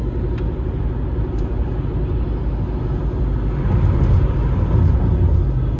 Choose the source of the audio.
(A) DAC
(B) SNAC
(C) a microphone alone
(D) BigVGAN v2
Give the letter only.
C